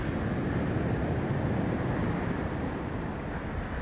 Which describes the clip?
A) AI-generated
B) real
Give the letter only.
B